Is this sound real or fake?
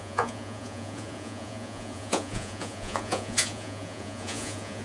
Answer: fake